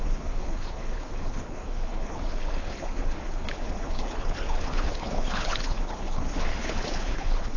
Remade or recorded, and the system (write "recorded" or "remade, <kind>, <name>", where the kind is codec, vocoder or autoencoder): remade, codec, HILCodec